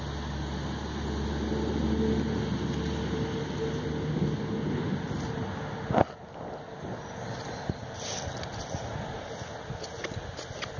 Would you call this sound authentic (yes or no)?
yes